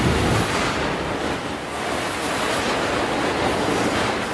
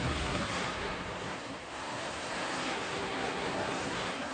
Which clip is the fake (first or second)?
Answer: second